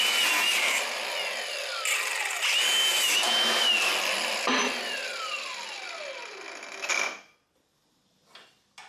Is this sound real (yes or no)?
yes